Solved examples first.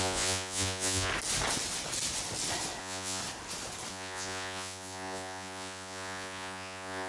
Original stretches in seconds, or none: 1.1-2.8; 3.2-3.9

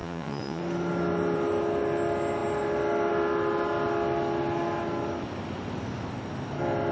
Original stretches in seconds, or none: 0.6-6.9

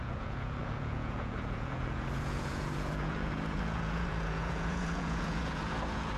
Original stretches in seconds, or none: none

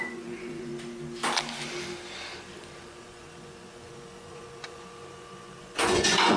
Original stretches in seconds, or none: 0.7-2.8